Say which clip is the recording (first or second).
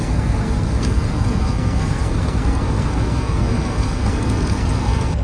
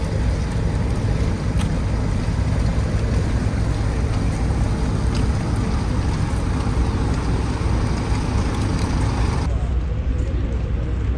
second